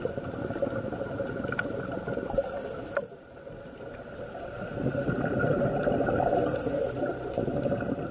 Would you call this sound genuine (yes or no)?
yes